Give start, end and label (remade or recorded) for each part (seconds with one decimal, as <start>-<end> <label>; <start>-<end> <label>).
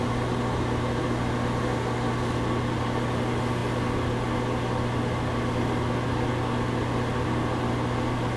0.0-8.4 recorded